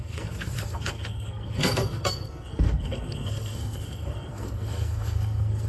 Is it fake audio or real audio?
fake